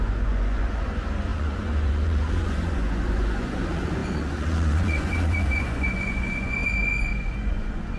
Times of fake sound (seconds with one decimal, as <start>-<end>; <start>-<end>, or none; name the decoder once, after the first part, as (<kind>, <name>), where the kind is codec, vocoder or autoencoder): 0.0-8.0 (vocoder, Vocos)